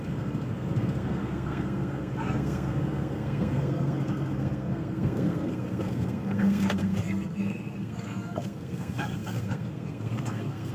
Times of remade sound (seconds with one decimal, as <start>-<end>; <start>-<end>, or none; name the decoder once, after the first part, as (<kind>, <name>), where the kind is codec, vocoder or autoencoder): 0.0-10.7 (codec, SNAC)